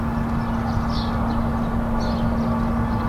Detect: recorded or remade recorded